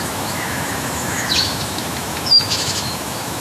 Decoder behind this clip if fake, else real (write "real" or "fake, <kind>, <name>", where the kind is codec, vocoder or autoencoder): fake, autoencoder, DAC-VAE